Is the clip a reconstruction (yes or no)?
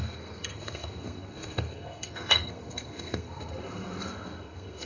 yes